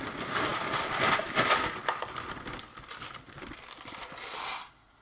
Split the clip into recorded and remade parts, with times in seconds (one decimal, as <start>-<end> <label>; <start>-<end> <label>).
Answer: 0.0-5.0 recorded